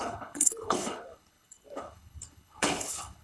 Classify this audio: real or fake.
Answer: fake